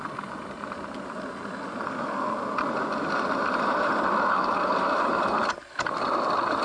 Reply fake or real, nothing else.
real